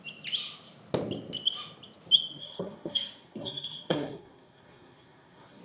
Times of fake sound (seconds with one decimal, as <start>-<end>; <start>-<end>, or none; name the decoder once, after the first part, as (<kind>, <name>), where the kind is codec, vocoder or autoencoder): 2.4-5.6 (codec, SNAC)